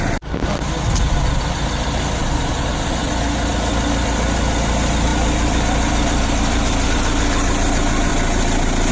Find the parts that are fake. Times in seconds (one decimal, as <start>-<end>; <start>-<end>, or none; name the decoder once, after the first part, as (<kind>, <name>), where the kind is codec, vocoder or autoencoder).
2.2-3.1 (vocoder, Vocos)